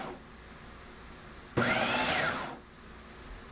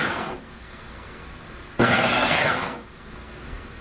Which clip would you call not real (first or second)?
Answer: second